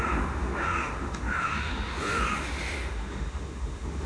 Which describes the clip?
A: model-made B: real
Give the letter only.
A